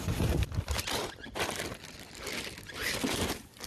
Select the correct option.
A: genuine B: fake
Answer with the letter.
A